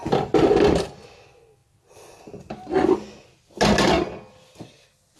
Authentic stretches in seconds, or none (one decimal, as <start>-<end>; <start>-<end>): 0.0-5.2